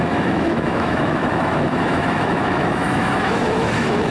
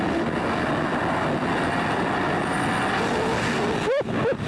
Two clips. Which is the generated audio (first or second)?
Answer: first